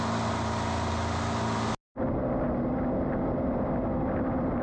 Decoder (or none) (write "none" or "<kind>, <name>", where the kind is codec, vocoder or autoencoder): none